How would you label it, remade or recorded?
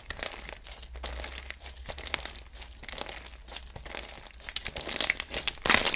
recorded